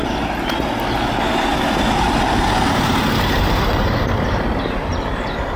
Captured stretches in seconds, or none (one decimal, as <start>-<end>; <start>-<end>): 0.0-1.5; 4.9-5.6

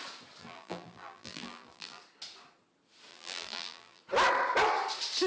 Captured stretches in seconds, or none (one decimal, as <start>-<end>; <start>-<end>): 0.0-0.4; 2.0-3.1; 4.0-5.3

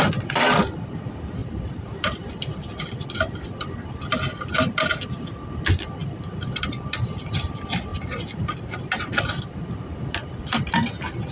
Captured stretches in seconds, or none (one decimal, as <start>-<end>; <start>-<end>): 0.0-1.4; 3.4-4.3; 5.2-6.0; 6.7-11.3

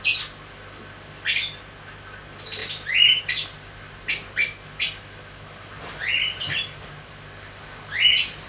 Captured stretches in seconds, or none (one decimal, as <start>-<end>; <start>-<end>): 0.0-2.6; 3.2-8.5

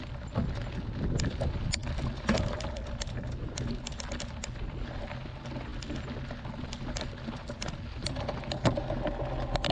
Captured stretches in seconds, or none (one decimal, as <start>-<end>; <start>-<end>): 0.0-9.7

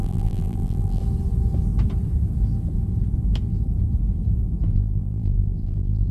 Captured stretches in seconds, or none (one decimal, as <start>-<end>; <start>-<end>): 1.0-4.7

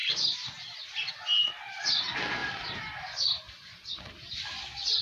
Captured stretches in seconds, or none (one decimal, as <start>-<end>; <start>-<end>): 1.1-2.4